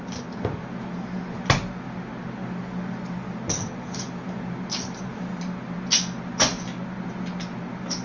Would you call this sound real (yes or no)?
yes